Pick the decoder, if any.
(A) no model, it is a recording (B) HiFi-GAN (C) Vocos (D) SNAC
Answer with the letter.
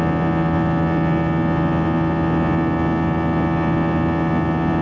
A